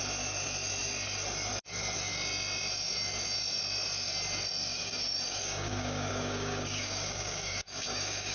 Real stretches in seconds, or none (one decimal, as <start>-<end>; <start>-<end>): 0.0-4.7

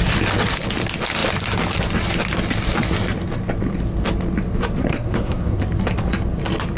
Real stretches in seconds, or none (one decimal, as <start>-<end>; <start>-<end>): 0.0-4.8; 5.6-6.8